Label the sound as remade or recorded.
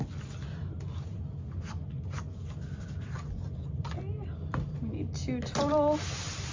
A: recorded